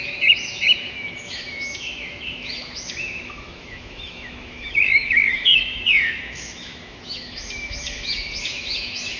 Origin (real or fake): fake